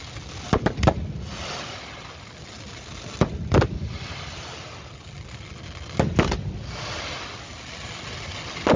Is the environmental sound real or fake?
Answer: real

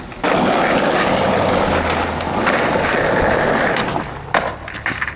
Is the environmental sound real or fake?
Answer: real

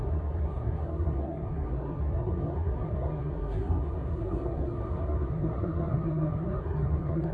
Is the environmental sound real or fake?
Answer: fake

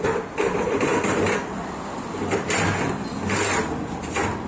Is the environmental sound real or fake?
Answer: real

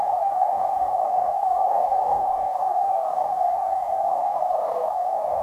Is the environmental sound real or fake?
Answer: fake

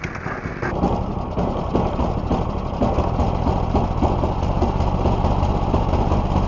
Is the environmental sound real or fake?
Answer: real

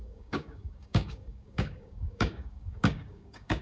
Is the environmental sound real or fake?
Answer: fake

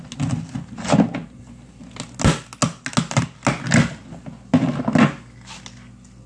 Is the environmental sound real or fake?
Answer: real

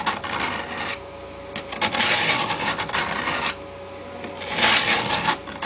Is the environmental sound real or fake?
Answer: fake